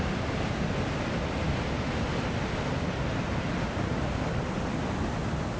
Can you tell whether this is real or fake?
real